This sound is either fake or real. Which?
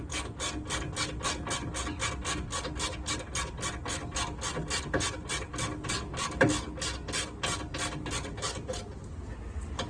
real